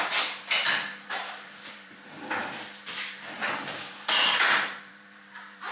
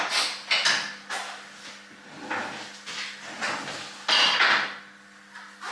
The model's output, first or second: first